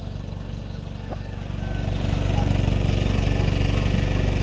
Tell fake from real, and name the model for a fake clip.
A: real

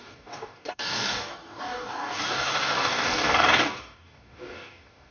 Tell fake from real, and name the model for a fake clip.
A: fake, codec, DAC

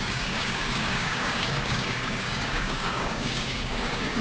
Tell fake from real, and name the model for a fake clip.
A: fake, codec, DAC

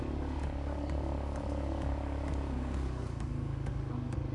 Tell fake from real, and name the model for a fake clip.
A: fake, codec, DAC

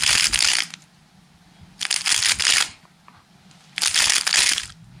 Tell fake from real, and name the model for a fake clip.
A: real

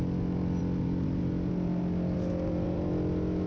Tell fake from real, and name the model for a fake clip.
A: real